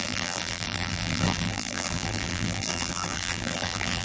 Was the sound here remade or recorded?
remade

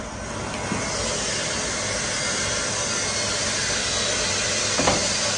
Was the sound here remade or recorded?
recorded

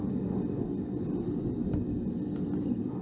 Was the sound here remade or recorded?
recorded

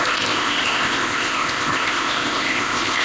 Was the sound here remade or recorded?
remade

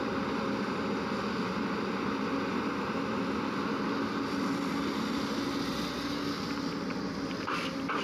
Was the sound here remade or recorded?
recorded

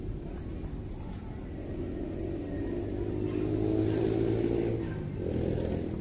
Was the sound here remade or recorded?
recorded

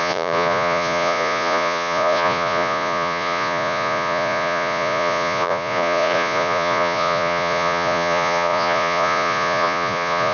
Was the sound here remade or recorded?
remade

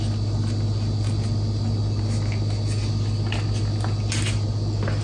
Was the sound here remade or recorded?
recorded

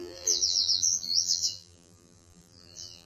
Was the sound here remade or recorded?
remade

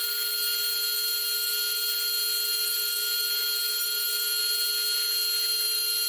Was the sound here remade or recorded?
recorded